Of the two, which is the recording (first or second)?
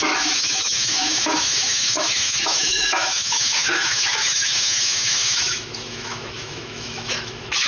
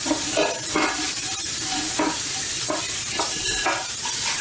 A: second